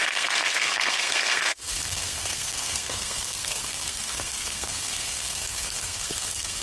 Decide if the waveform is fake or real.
fake